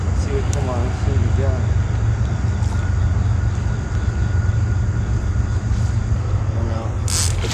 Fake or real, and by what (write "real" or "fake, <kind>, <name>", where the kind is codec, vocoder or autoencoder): real